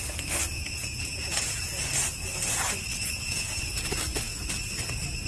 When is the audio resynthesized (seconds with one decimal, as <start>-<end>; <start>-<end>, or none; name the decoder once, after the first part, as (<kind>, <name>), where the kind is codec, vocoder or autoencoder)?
0.5-1.9 (vocoder, Vocos); 2.9-3.6